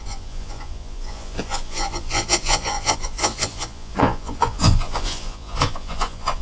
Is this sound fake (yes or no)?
yes